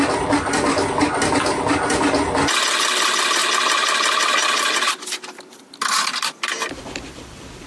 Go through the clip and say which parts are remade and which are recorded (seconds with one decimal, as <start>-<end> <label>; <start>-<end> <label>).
0.0-3.4 remade; 3.4-7.1 recorded; 7.1-7.7 remade